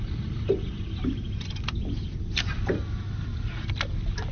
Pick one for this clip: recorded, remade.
recorded